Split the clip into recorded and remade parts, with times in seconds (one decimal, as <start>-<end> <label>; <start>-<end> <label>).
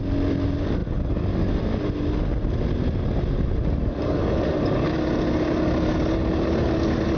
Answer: 0.0-7.2 recorded